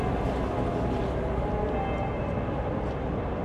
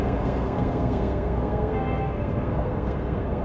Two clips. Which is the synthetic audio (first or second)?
second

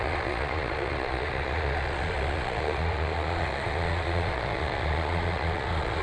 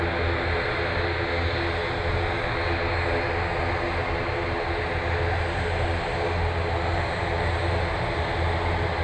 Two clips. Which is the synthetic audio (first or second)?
first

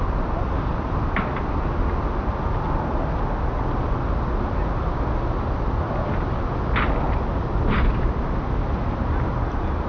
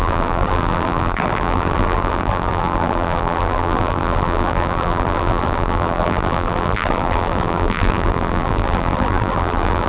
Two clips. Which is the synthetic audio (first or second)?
second